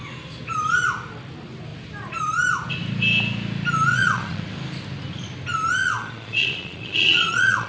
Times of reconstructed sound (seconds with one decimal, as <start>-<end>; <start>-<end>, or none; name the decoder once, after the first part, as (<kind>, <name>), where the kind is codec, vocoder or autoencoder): 3.9-4.4 (vocoder, Vocos); 5.8-7.7